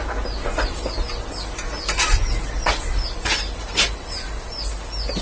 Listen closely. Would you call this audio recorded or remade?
recorded